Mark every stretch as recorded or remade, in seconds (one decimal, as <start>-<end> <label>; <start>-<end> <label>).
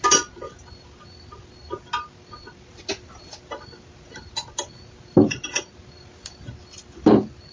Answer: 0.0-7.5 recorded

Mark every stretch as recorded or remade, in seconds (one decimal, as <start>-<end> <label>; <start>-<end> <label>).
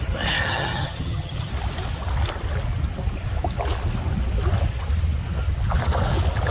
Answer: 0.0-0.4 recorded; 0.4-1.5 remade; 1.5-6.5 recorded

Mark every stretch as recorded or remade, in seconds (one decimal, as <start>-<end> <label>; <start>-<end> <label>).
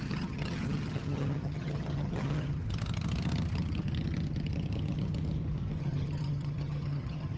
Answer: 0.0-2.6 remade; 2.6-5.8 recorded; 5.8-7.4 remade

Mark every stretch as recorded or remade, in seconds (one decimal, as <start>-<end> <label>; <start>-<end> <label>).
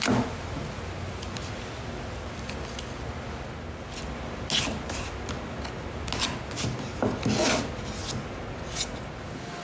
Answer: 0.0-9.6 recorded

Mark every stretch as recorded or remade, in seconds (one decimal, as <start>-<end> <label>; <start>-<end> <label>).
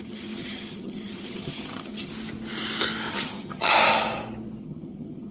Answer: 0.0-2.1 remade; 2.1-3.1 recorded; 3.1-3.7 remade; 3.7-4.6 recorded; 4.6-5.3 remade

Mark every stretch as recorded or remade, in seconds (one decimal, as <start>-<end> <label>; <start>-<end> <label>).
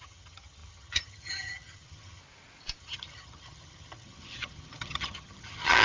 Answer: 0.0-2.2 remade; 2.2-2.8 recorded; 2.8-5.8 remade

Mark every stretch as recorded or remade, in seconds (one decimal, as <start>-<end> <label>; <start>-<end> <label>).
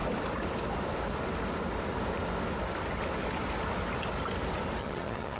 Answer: 0.0-4.8 recorded; 4.8-5.4 remade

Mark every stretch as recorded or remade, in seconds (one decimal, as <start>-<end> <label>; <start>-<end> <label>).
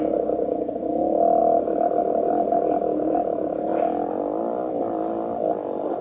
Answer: 0.0-6.0 recorded